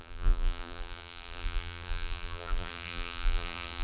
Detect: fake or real fake